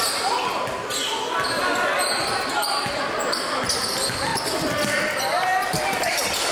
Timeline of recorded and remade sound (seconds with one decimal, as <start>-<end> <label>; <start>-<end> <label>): 0.0-4.3 recorded; 4.3-5.0 remade; 5.0-5.5 recorded; 5.5-6.1 remade; 6.1-6.5 recorded